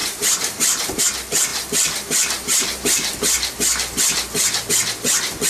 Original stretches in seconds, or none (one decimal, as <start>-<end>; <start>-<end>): 1.0-5.5